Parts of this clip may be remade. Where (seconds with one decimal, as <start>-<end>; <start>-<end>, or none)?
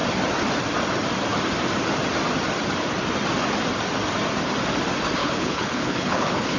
5.2-6.6